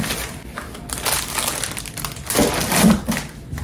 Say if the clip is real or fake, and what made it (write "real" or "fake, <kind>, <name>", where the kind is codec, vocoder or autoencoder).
real